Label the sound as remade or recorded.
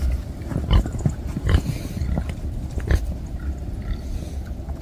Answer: remade